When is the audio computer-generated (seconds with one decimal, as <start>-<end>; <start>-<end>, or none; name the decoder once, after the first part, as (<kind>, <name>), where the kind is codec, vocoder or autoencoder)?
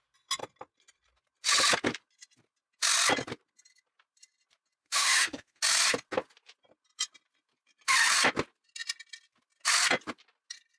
4.8-5.6 (autoencoder, DAC-VAE)